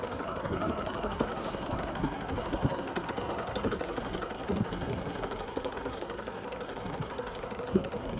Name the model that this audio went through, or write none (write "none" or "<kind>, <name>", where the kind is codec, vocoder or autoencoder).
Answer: codec, SNAC